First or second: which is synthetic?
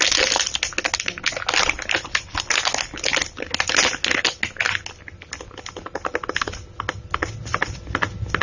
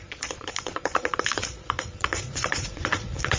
second